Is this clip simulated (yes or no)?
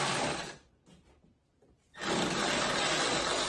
no